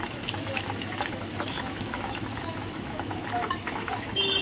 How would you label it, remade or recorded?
remade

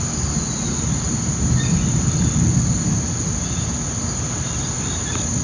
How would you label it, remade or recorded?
recorded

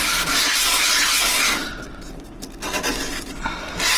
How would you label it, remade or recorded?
recorded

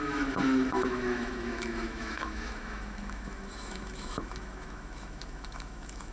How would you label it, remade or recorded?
remade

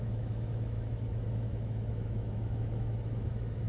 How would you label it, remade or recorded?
remade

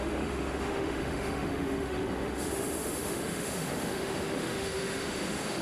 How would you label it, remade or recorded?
remade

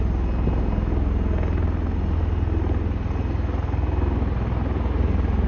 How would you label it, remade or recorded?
recorded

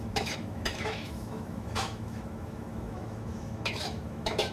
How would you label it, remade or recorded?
remade